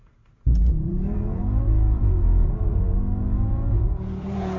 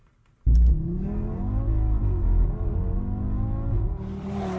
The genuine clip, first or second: second